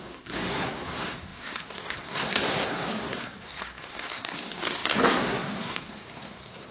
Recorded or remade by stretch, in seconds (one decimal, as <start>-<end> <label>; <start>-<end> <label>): 0.0-6.7 remade